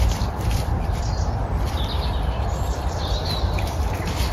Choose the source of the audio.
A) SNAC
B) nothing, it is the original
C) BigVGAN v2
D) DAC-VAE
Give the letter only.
C